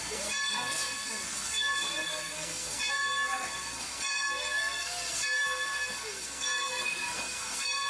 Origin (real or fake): fake